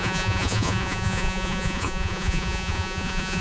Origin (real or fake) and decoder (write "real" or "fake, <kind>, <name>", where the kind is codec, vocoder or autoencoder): fake, vocoder, Vocos